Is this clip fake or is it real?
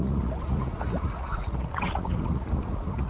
fake